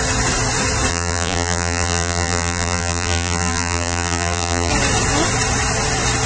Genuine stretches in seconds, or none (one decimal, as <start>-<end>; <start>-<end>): 0.0-0.9; 4.7-6.3